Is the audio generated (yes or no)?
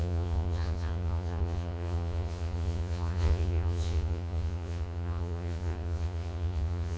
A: yes